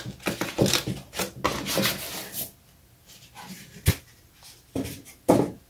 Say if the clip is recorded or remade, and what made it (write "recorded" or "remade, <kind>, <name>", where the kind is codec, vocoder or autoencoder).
recorded